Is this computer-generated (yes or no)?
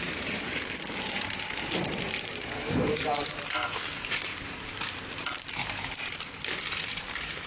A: yes